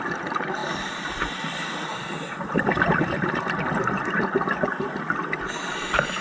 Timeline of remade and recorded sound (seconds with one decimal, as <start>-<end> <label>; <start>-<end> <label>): 0.0-0.6 recorded; 0.6-3.6 remade; 3.6-6.2 recorded